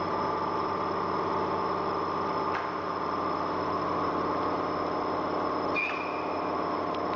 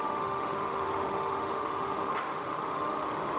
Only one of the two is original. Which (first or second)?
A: first